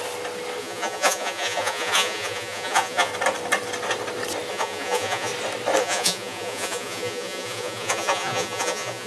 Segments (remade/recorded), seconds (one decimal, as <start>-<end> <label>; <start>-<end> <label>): 0.0-0.6 recorded; 0.6-3.1 remade; 3.1-4.5 recorded; 4.5-5.3 remade; 5.3-5.8 recorded; 5.8-9.1 remade